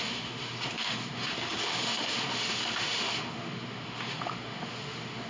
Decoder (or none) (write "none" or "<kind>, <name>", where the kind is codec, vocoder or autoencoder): autoencoder, DAC-VAE